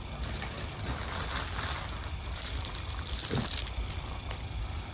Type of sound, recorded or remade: remade